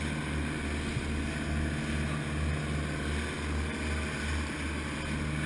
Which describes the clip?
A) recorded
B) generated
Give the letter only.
A